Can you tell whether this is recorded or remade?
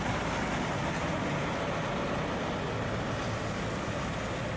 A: recorded